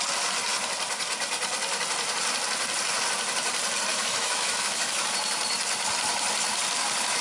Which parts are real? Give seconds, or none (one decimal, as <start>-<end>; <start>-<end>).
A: 0.0-3.9; 5.1-7.2